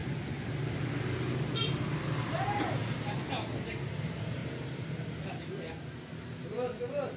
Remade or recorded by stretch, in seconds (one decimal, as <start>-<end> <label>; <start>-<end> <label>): 0.0-4.4 recorded; 4.4-5.5 remade; 5.5-7.2 recorded